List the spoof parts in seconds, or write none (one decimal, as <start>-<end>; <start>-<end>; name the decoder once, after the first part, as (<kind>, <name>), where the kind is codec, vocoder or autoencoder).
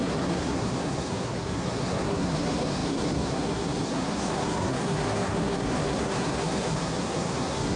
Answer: 0.0-7.8 (codec, SNAC)